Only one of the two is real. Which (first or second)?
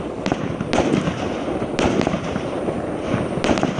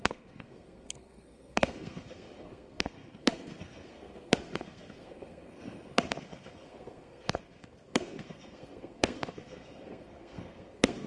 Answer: first